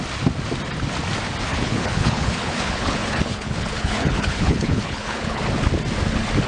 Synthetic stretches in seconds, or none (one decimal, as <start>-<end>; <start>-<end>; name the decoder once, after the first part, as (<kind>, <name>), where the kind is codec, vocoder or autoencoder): 1.5-5.4 (codec, HILCodec)